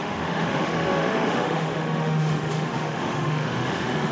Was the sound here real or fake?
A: fake